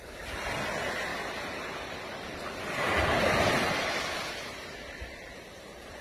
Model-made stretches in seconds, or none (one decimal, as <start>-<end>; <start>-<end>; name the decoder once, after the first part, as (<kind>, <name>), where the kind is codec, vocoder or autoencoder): none